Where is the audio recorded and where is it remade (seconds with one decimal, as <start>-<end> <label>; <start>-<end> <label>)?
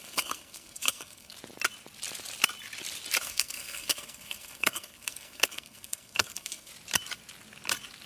0.0-1.3 remade; 1.3-3.2 recorded; 3.2-6.7 remade; 6.7-8.1 recorded